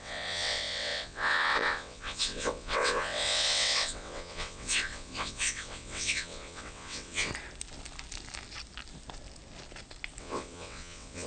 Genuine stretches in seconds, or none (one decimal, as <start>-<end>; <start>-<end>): 7.3-10.2